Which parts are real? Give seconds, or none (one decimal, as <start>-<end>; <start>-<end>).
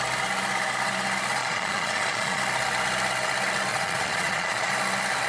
0.0-1.4; 2.4-3.7; 4.7-5.3